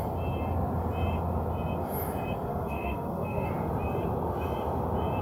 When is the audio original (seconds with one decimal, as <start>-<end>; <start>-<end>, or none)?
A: 0.0-2.5; 3.5-5.2